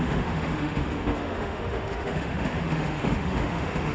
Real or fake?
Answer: fake